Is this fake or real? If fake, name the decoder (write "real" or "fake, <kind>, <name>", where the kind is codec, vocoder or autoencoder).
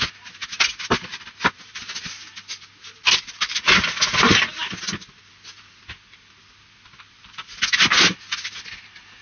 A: real